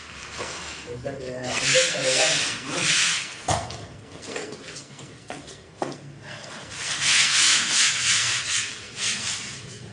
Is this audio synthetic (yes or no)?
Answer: yes